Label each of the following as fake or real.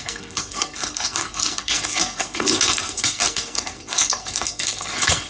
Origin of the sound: fake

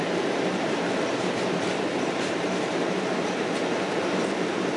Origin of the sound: fake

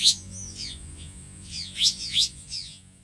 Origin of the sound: fake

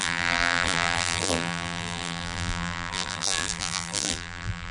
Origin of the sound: fake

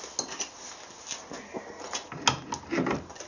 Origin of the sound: real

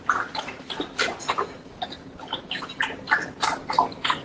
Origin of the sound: real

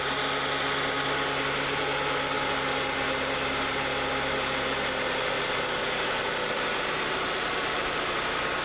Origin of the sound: real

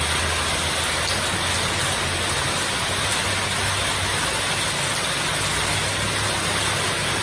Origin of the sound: real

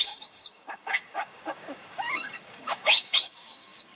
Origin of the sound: fake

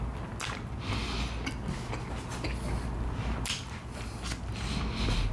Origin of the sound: real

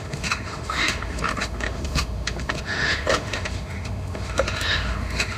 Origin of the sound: fake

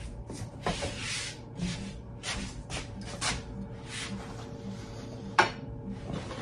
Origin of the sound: real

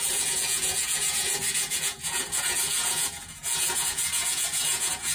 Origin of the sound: fake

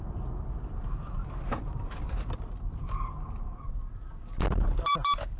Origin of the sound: fake